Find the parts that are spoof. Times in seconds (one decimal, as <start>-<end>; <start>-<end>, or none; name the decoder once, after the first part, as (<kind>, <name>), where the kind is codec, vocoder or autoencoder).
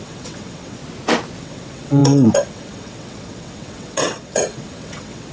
0.0-0.8 (vocoder, WaveNeXt); 1.4-5.3